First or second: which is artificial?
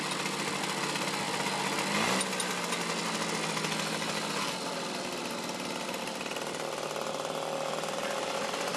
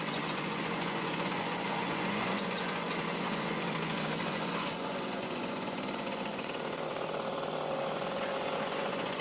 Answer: second